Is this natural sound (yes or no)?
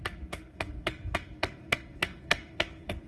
no